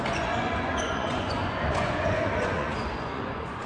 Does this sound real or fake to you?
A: fake